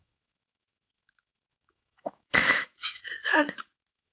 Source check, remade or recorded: remade